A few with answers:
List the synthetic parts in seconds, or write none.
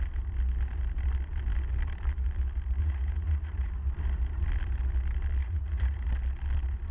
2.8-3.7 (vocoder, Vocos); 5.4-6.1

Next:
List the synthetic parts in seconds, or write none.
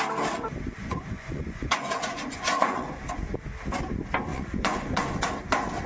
0.8-2.9 (vocoder, Vocos); 4.3-5.2